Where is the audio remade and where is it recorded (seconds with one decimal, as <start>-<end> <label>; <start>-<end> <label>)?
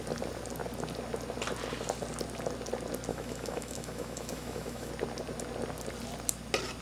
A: 0.0-3.1 recorded; 3.1-4.9 remade; 4.9-6.8 recorded